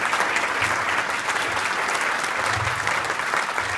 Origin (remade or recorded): recorded